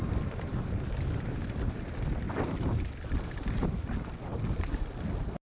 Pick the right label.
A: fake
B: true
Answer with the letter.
B